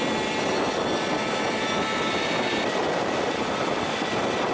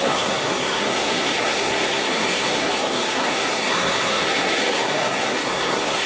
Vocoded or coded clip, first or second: second